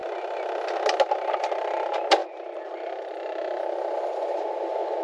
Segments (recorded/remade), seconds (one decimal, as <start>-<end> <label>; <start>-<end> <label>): 0.0-5.0 recorded